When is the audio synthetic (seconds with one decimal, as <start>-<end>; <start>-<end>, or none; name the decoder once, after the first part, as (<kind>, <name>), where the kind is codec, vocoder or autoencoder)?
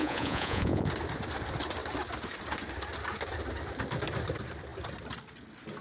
0.0-0.9 (vocoder, Vocos)